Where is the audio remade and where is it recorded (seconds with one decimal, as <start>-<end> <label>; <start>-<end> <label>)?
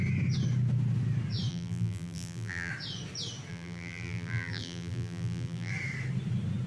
0.0-1.5 recorded; 1.5-2.7 remade; 2.7-3.5 recorded; 3.5-5.7 remade; 5.7-6.7 recorded